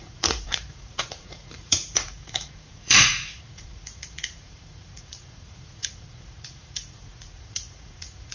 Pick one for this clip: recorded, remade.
remade